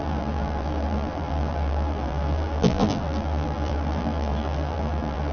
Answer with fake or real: fake